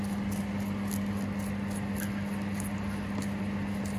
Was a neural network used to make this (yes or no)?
no